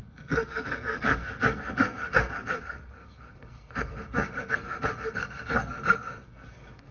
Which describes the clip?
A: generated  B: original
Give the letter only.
A